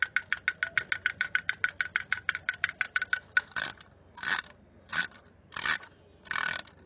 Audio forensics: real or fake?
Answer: real